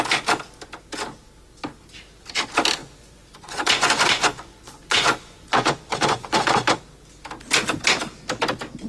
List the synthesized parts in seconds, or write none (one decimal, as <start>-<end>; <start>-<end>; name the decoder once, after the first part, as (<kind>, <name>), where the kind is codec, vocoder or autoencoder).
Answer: 2.8-6.8 (vocoder, Vocos)